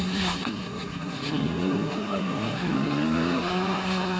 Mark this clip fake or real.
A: fake